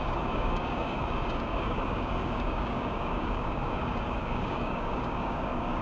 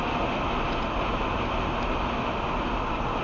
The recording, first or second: second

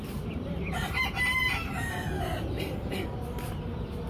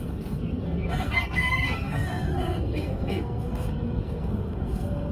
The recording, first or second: first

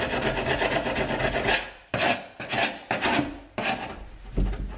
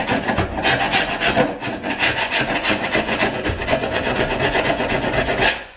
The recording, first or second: first